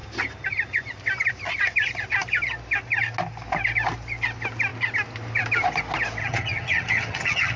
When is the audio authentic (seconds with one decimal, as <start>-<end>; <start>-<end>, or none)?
0.0-6.2

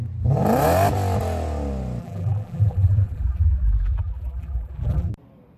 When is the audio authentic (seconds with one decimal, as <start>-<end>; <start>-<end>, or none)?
0.0-2.0; 5.1-5.6

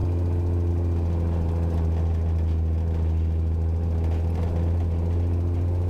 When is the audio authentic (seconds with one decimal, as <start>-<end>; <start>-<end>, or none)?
0.0-5.9

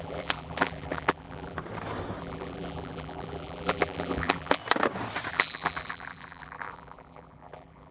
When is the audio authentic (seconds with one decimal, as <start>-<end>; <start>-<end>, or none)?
1.6-2.2; 4.6-5.3

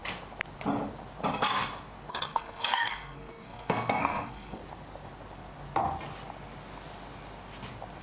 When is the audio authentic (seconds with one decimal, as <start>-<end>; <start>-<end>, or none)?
0.0-2.1; 4.6-8.0

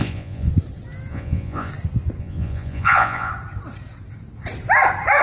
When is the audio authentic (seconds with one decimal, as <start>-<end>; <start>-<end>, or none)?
0.5-1.1; 1.7-2.2; 3.3-5.2